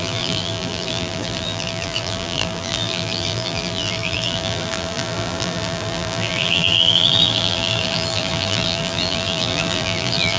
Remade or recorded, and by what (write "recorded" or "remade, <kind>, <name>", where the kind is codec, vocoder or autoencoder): remade, vocoder, BigVGAN v2